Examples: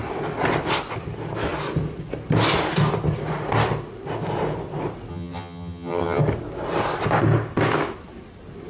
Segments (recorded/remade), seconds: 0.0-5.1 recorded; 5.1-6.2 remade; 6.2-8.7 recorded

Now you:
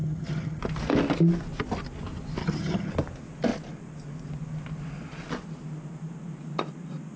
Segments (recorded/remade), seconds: 0.0-0.6 remade; 0.6-2.4 recorded; 2.4-2.9 remade; 2.9-7.2 recorded

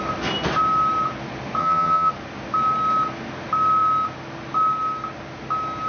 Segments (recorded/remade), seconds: 0.0-1.6 recorded; 1.6-2.1 remade; 2.1-5.9 recorded

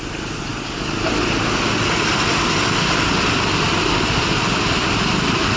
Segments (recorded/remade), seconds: 0.0-5.6 recorded

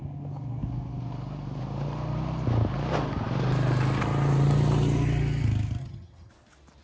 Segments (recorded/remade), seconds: 0.0-5.8 recorded; 5.8-6.3 remade; 6.3-6.8 recorded

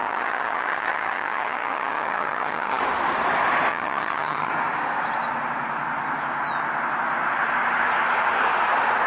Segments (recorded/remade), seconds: 0.0-2.8 remade; 2.8-3.7 recorded; 3.7-4.5 remade; 4.5-9.1 recorded

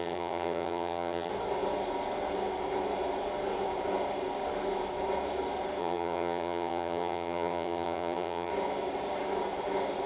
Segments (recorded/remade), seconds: 0.0-1.3 remade; 1.3-5.8 recorded; 5.8-8.5 remade; 8.5-10.1 recorded